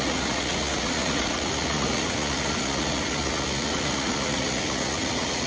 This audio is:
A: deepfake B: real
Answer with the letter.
A